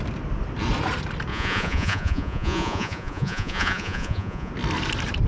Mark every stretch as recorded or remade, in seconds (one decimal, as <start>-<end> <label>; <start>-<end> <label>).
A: 0.0-1.3 recorded; 1.3-4.5 remade; 4.5-5.3 recorded